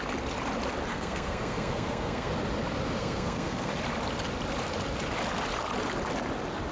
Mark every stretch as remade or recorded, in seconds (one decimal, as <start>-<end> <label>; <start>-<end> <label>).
0.0-0.9 recorded; 0.9-2.3 remade; 2.3-3.0 recorded; 3.0-3.7 remade; 3.7-6.7 recorded